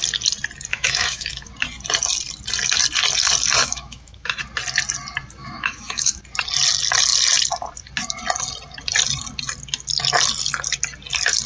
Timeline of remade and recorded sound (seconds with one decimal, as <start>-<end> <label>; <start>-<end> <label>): 0.0-0.7 recorded; 0.7-1.5 remade; 1.5-3.6 recorded; 3.6-4.4 remade; 4.4-5.4 recorded; 5.4-6.2 remade; 6.2-11.5 recorded

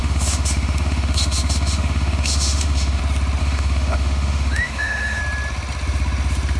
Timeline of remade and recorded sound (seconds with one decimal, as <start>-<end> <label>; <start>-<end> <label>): 0.0-3.0 remade; 3.0-3.4 recorded; 3.4-5.2 remade; 5.2-6.6 recorded

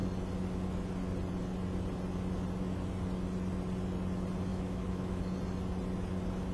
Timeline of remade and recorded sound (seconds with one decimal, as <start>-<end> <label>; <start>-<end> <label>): 0.0-4.5 recorded; 4.5-5.2 remade; 5.2-6.5 recorded